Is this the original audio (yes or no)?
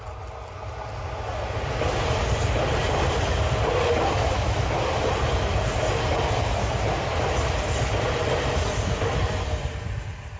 yes